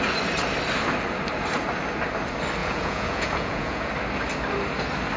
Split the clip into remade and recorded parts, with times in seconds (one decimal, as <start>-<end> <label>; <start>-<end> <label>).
0.0-2.6 recorded; 2.6-3.9 remade; 3.9-5.2 recorded